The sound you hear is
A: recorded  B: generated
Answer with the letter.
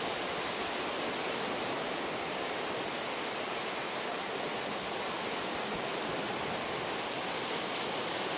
A